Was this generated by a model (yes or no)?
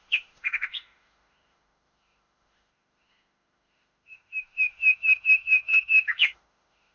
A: yes